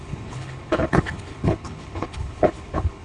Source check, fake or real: fake